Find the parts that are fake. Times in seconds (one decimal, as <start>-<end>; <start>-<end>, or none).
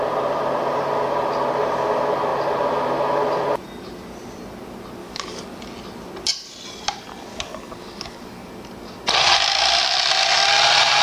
5.0-5.6; 7.3-8.5